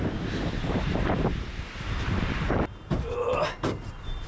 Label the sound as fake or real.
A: fake